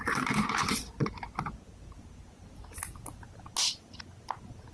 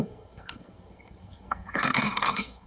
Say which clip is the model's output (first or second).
second